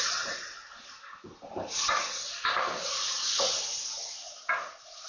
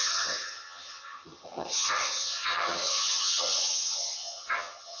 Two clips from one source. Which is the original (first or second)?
first